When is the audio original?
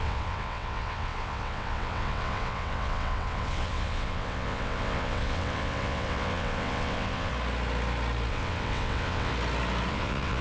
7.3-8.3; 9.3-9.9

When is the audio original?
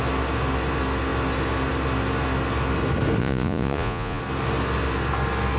0.0-3.2; 4.2-5.6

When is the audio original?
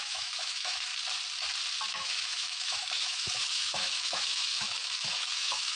0.9-1.9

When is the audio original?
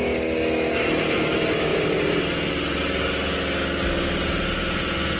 0.0-5.2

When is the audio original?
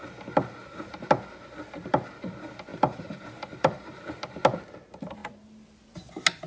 0.0-2.7; 4.0-6.5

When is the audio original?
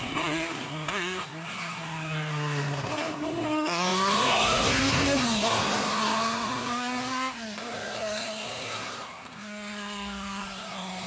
none